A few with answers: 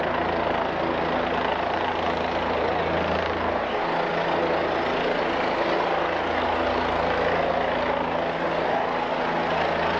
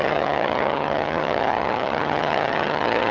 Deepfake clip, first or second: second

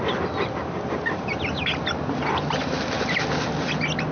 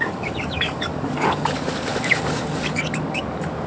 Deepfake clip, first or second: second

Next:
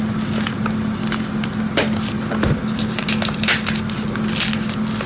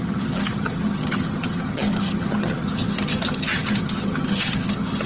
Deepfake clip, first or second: second